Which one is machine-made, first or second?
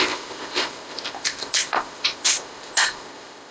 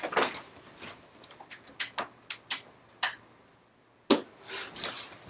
first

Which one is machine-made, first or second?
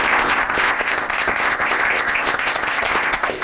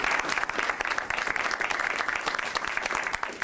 first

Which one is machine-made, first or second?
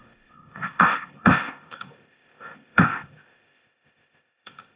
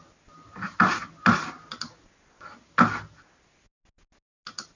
first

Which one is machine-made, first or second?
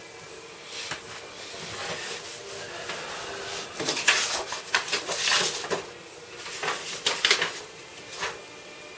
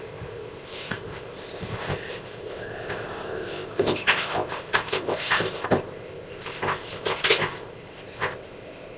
second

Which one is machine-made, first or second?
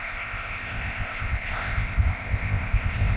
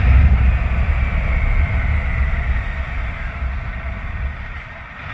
first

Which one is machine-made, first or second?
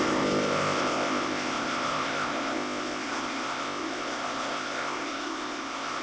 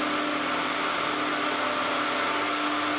first